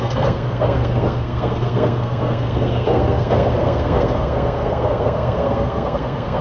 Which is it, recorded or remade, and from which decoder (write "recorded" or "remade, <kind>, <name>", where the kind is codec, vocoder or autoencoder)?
remade, codec, SNAC